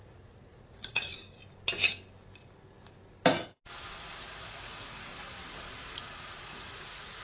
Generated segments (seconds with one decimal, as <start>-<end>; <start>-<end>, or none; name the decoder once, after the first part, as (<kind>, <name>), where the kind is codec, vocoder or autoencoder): 0.0-1.1 (vocoder, Vocos); 3.9-5.1; 6.0-7.2